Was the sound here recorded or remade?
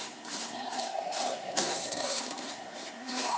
remade